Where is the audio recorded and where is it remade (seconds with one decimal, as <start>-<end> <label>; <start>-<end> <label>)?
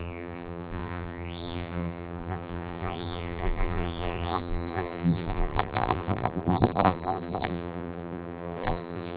0.0-9.2 remade